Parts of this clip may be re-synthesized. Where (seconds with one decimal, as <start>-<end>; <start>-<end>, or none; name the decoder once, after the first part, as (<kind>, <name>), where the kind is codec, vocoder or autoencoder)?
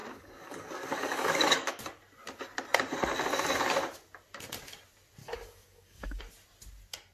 0.0-1.8 (codec, DAC); 5.2-6.2